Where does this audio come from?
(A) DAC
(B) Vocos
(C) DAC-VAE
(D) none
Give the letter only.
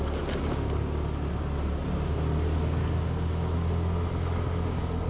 D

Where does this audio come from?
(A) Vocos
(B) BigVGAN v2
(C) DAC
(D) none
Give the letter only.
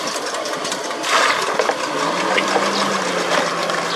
D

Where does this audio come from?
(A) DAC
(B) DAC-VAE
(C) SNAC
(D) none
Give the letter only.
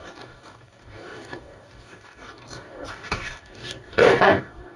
A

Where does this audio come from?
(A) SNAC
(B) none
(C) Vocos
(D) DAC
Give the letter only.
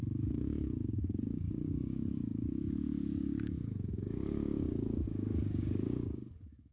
D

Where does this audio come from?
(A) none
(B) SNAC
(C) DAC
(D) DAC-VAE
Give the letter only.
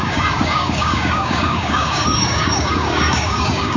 C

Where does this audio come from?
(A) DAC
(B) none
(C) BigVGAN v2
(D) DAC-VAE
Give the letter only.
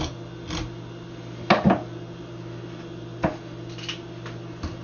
B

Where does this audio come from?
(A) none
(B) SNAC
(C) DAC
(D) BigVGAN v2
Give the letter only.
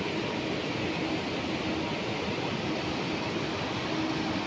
A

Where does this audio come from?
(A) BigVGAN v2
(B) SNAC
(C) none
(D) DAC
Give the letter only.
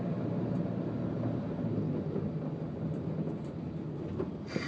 C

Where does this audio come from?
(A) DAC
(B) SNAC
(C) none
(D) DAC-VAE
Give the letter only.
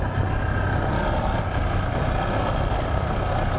C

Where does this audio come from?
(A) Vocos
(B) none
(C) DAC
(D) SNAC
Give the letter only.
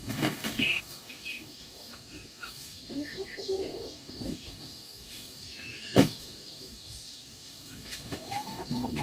C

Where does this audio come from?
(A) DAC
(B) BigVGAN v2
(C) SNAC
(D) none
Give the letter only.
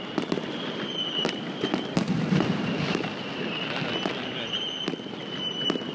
D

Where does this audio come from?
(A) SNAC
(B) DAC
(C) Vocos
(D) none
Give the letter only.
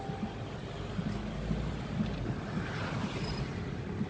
D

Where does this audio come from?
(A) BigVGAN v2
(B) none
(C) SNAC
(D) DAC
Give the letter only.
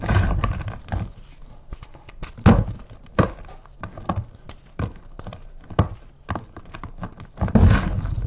B